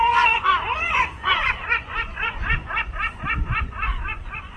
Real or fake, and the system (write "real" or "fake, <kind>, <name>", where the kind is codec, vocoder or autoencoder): fake, vocoder, Vocos